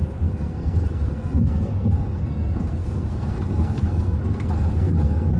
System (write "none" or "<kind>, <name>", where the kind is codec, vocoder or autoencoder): codec, SNAC